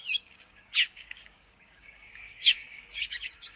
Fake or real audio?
fake